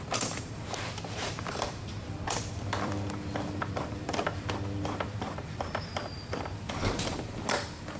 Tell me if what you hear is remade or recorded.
remade